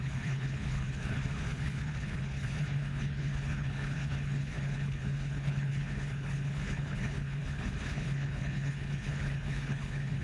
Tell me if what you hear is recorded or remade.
remade